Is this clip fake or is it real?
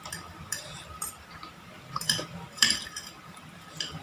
fake